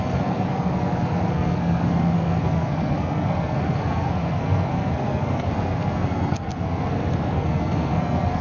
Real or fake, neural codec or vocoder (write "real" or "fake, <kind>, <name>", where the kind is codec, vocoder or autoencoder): fake, codec, SNAC